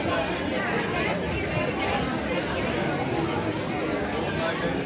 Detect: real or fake real